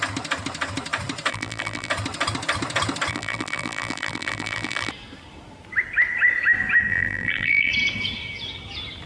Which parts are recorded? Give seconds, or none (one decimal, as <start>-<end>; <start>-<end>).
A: 0.0-1.3; 1.9-3.1; 4.9-6.9; 7.7-9.1